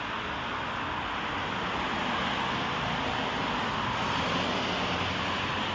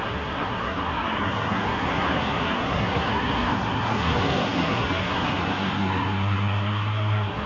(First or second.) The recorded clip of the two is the first